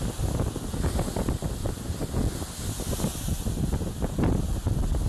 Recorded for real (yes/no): yes